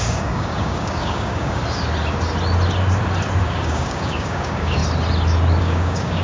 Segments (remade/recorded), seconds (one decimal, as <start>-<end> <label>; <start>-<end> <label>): 0.0-1.6 remade; 1.6-3.4 recorded; 3.4-4.8 remade; 4.8-5.6 recorded; 5.6-6.2 remade